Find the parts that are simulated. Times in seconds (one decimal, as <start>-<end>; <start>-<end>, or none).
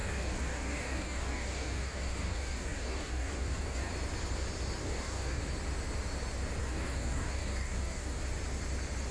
0.0-3.9; 4.8-5.4; 6.6-8.2